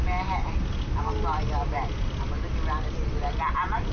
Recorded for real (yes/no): yes